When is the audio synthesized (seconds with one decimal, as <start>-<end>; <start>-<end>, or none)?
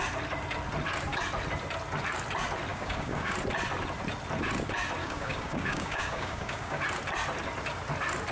2.7-3.3; 5.0-6.8